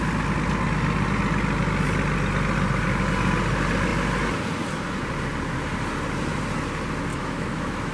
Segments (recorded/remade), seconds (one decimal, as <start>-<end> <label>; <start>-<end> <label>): 0.0-7.1 recorded; 7.1-7.9 remade